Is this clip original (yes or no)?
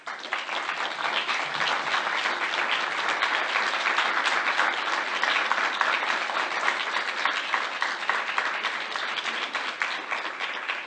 yes